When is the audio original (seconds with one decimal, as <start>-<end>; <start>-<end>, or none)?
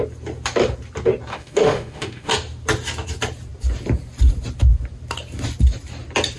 0.0-1.3; 2.3-6.4